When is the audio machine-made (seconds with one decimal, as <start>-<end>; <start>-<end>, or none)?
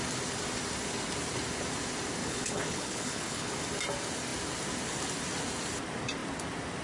2.2-3.5